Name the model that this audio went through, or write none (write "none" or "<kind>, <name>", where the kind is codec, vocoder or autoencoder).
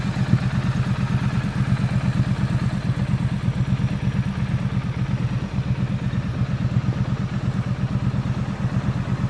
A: none